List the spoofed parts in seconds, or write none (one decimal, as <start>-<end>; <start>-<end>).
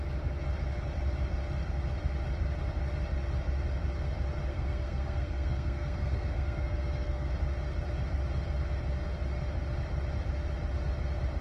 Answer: 4.5-7.3